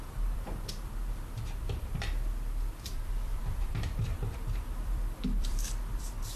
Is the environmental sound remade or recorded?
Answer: remade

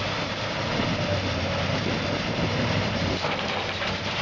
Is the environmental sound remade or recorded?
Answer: remade